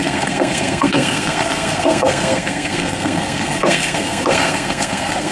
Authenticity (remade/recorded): remade